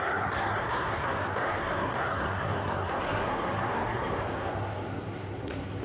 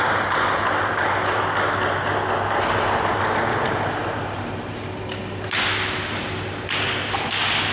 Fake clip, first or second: first